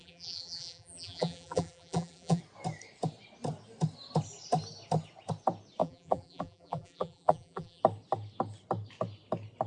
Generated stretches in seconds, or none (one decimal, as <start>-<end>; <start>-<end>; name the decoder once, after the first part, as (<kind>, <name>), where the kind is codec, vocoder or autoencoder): 0.0-2.4 (vocoder, BigVGAN v2); 5.8-7.8